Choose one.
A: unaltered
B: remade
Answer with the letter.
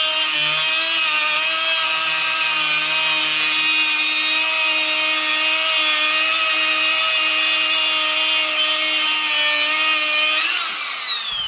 A